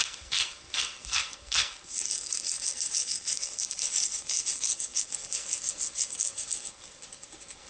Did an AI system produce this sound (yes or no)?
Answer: yes